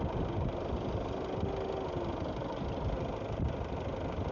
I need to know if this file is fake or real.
real